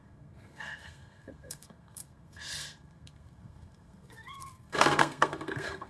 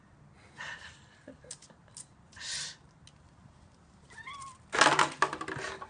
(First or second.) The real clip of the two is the second